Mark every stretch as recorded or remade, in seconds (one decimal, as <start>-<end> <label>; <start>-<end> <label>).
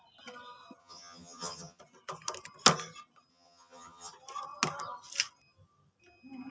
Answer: 0.0-0.8 recorded; 0.8-1.8 remade; 1.8-3.3 recorded; 3.3-4.1 remade; 4.1-6.5 recorded